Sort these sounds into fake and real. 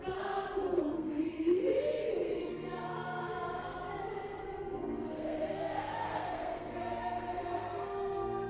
fake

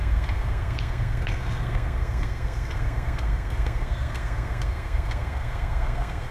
fake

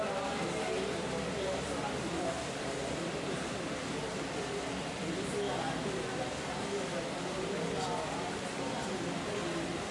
real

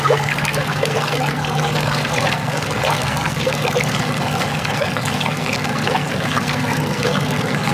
fake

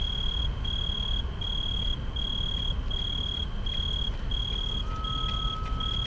real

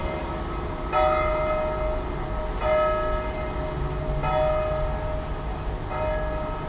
real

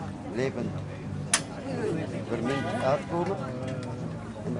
real